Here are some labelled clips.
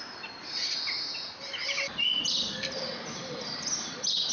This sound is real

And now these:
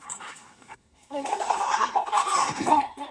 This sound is fake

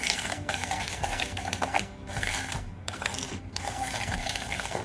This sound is fake